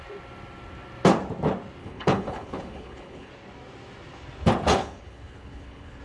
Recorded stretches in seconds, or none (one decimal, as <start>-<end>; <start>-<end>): 0.0-1.8; 3.3-4.8